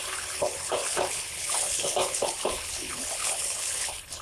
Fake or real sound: fake